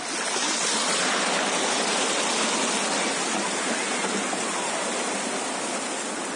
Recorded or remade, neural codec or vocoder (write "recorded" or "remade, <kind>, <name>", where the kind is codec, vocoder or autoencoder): recorded